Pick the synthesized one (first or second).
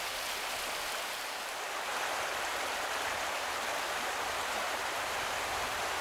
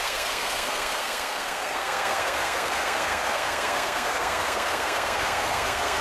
second